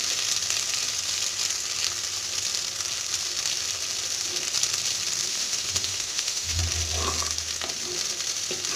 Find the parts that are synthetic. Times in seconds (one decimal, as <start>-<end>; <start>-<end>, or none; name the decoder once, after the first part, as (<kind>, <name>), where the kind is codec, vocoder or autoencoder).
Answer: 5.3-6.6 (autoencoder, DAC-VAE)